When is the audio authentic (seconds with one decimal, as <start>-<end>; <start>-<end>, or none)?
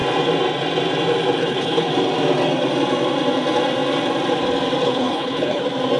0.0-1.4; 1.9-4.8; 5.6-6.0